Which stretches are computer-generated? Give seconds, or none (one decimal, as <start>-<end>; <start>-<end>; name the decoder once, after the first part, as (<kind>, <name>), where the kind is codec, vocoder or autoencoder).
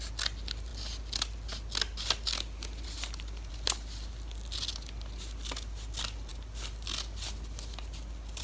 none